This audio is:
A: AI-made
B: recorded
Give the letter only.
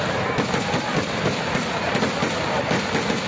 B